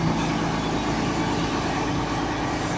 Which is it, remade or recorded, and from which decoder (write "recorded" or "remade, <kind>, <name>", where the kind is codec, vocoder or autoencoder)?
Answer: recorded